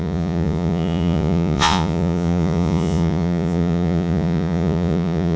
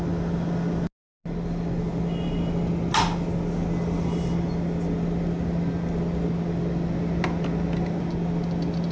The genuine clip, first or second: second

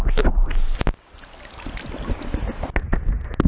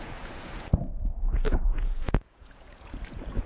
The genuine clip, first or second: first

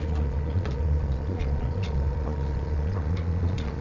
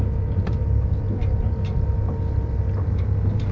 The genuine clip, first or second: second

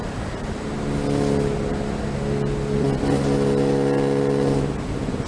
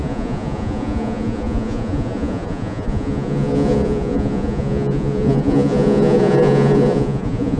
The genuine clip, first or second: first